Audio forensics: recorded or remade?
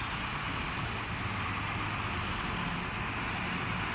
recorded